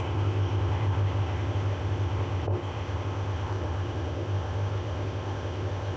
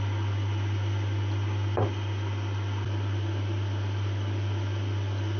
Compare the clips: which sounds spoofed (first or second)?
first